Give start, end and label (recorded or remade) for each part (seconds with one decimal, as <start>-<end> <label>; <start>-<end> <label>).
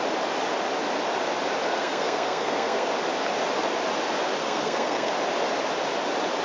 0.0-1.8 recorded; 1.8-2.9 remade; 2.9-4.4 recorded; 4.4-5.1 remade; 5.1-6.4 recorded